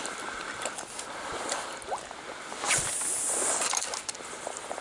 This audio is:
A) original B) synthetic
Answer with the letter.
A